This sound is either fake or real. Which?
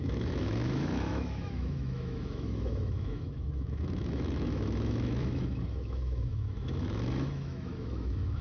fake